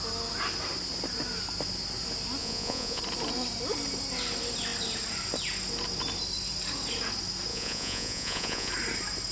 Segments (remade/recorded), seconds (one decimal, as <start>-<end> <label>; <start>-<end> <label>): 0.0-2.4 recorded; 2.4-3.0 remade; 3.0-7.5 recorded; 7.5-8.7 remade; 8.7-9.3 recorded